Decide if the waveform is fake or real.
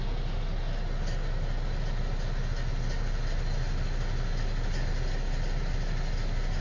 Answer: real